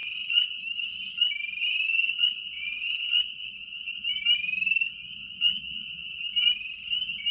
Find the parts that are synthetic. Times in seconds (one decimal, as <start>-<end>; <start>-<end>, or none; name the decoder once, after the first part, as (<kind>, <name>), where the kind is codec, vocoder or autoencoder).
0.0-0.6 (vocoder, Vocos); 1.6-3.5; 5.4-6.2